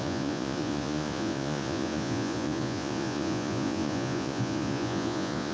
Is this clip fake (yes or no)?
yes